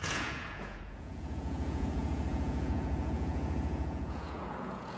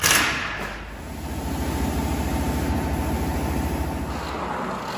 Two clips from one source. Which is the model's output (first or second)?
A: first